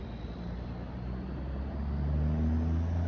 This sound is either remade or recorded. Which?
recorded